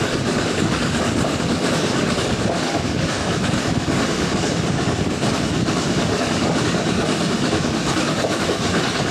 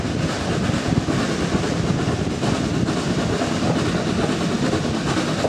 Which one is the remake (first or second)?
first